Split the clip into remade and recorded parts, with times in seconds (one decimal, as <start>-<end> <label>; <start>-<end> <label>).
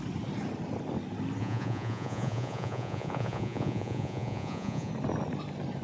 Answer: 0.0-1.4 recorded; 1.4-4.9 remade; 4.9-5.8 recorded